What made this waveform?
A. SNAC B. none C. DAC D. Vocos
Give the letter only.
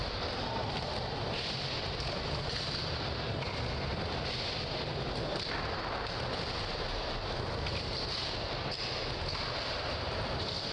B